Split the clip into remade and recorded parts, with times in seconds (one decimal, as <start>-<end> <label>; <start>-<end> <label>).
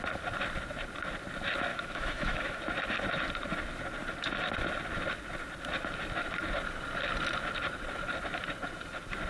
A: 0.0-1.7 recorded; 1.7-2.6 remade; 2.6-9.3 recorded